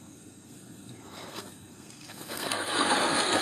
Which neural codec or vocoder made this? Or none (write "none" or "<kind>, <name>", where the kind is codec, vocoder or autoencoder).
codec, SNAC